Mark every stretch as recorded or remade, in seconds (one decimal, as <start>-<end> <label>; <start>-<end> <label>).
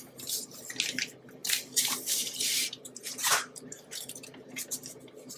0.0-1.4 recorded; 1.4-4.6 remade; 4.6-5.4 recorded